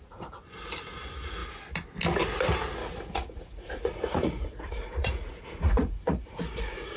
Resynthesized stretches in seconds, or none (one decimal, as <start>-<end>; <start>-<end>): 2.8-7.0